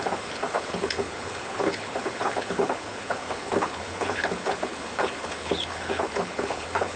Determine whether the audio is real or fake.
fake